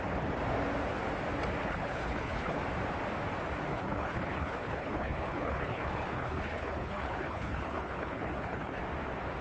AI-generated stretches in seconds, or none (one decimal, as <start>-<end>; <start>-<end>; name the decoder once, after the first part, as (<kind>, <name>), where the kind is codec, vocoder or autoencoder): 1.6-2.6 (codec, HILCodec); 3.7-8.8